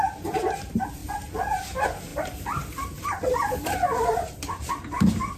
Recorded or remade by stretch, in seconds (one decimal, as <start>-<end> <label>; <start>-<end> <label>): 0.0-1.0 recorded; 1.0-1.6 remade; 1.6-2.1 recorded; 2.1-4.7 remade; 4.7-5.4 recorded